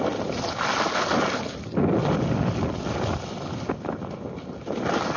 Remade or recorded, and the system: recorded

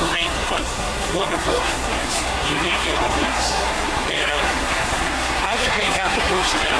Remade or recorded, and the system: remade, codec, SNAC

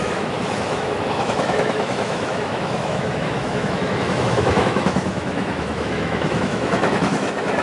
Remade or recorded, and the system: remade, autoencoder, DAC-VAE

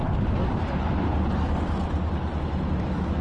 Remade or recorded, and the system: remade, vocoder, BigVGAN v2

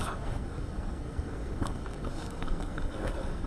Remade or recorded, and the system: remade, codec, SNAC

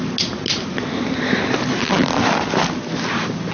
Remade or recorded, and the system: recorded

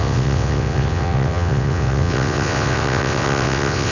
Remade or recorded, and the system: remade, vocoder, WaveNeXt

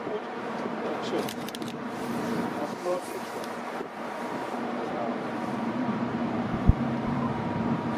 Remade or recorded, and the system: remade, vocoder, BigVGAN v2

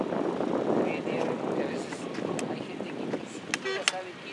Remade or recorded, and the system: recorded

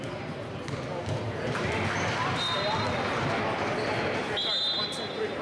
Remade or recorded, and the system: recorded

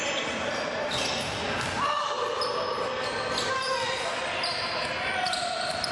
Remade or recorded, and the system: recorded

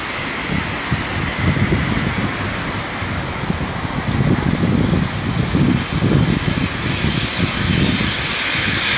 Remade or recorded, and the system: recorded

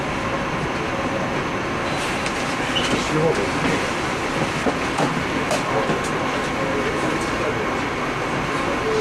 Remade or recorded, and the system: recorded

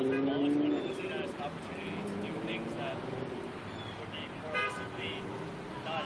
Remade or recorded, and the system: recorded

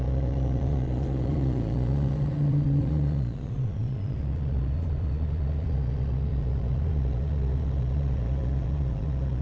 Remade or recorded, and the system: remade, vocoder, Vocos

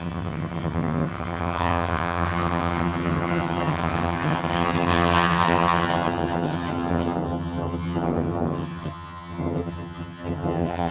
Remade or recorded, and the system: remade, vocoder, HiFi-GAN